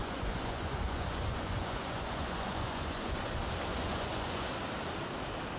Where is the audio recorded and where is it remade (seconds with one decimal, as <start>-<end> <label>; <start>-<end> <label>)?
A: 0.0-3.3 remade; 3.3-3.7 recorded; 3.7-4.5 remade; 4.5-5.6 recorded